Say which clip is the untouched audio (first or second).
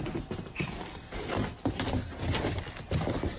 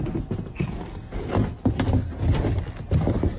second